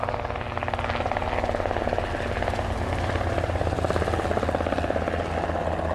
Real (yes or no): yes